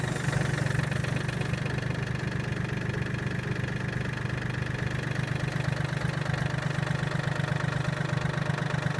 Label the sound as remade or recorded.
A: recorded